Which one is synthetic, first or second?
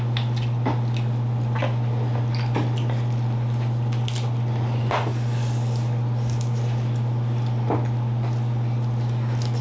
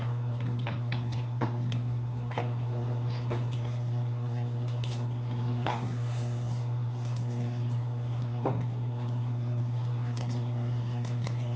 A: second